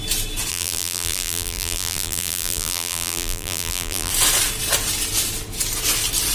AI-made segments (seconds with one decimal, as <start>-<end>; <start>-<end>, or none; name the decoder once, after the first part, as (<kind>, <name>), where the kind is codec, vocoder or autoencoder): 0.5-4.1 (vocoder, BigVGAN v2)